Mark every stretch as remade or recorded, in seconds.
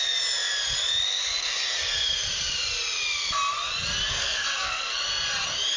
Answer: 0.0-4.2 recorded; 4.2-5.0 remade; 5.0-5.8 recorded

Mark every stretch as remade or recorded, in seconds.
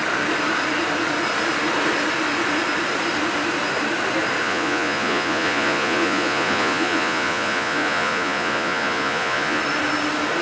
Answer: 0.0-4.4 recorded; 4.4-9.6 remade; 9.6-10.4 recorded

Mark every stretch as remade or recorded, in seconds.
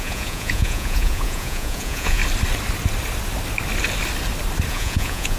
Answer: 0.0-2.2 remade; 2.2-4.7 recorded; 4.7-5.4 remade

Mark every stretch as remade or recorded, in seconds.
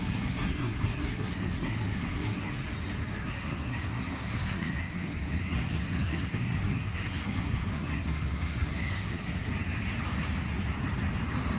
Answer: 0.0-2.5 remade; 2.5-3.2 recorded; 3.2-9.5 remade; 9.5-11.6 recorded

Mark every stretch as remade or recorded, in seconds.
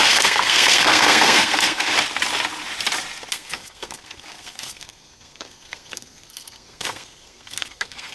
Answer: 0.0-1.9 remade; 1.9-3.3 recorded; 3.3-8.1 remade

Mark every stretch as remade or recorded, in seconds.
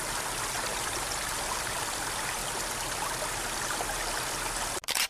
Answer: 0.0-5.1 recorded